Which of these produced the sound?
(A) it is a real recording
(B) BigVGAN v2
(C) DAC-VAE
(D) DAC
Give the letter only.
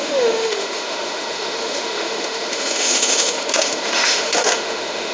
C